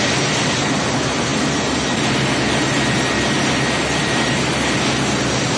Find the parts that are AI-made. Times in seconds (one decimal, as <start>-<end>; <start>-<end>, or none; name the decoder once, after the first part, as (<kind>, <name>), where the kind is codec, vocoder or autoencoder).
none